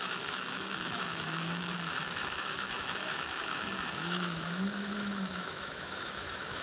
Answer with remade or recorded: remade